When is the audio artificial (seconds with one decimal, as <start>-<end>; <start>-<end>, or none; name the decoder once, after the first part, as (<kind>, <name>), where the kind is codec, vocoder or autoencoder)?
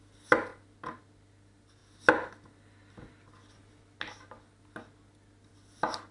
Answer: none